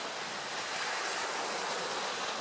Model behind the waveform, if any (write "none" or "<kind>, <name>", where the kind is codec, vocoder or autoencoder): none